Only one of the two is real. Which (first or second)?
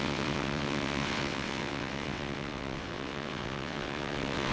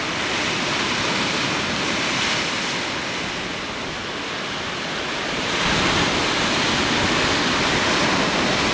second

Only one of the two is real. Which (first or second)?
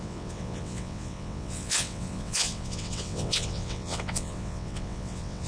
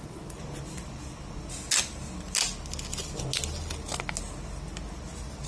second